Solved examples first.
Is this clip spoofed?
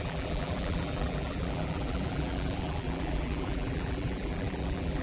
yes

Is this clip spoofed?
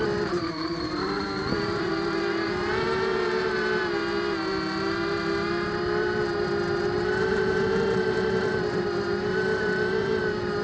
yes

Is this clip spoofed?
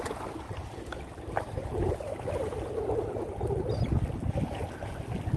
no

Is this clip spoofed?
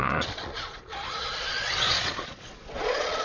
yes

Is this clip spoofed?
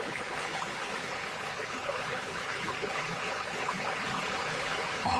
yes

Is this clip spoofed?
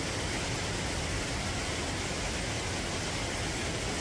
no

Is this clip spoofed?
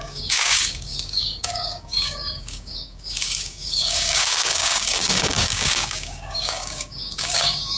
yes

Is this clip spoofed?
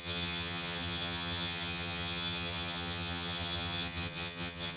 yes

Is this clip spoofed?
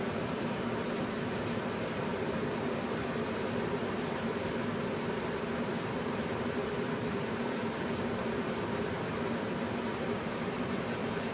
yes